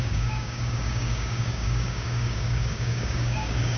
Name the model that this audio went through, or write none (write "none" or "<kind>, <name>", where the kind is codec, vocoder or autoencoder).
codec, DAC